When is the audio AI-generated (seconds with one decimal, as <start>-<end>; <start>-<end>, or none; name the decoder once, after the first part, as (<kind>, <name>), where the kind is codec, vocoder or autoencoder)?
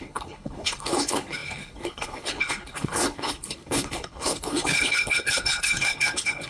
0.0-6.5 (codec, HILCodec)